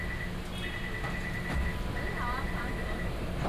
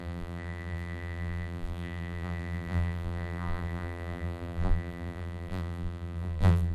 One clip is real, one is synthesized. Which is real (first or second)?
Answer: first